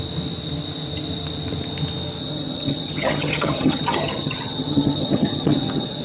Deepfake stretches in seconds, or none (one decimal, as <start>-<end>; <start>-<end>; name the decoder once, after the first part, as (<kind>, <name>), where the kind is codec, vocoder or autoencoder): 2.2-6.0 (vocoder, HiFi-GAN)